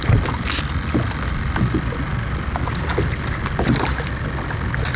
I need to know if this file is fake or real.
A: real